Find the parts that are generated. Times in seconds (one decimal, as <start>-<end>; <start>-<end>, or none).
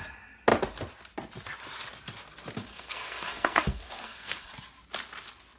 2.7-4.5